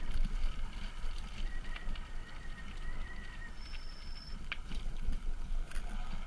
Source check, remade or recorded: recorded